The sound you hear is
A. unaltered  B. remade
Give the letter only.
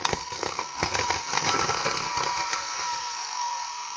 B